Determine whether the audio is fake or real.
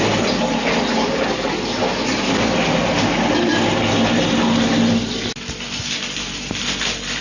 real